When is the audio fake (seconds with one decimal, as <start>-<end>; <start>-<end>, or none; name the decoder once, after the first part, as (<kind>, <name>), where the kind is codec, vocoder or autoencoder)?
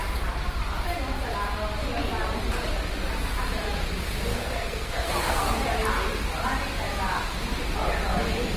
4.3-5.5 (codec, SNAC)